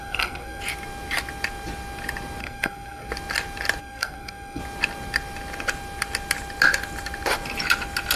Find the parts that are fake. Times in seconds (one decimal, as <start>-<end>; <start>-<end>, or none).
0.0-0.6; 2.4-3.1; 3.8-4.6